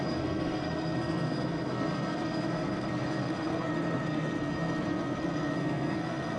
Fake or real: fake